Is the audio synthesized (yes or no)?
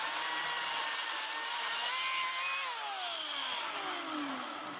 no